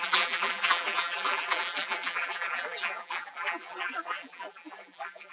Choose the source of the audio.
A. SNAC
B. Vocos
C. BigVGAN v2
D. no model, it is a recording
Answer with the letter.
C